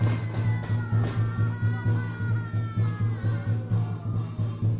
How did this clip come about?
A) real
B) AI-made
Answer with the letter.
A